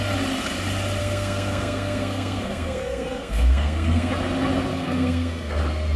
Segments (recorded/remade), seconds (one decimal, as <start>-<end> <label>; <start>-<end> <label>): 0.0-1.0 recorded; 1.0-4.1 remade; 4.1-4.7 recorded; 4.7-5.6 remade; 5.6-6.0 recorded